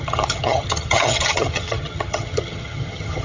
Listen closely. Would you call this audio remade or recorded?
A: remade